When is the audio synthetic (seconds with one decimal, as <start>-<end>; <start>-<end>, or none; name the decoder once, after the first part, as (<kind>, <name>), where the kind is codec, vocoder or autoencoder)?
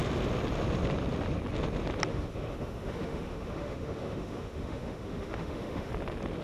2.1-5.9 (autoencoder, DAC-VAE)